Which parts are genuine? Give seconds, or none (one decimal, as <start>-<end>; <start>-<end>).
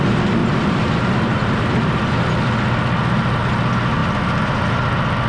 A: 0.0-0.4; 2.1-5.3